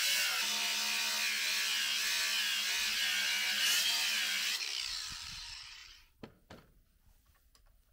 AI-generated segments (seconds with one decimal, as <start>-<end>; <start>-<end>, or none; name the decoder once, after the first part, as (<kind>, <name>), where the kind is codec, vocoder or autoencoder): 0.0-0.5 (vocoder, BigVGAN v2); 1.4-2.3; 3.6-7.9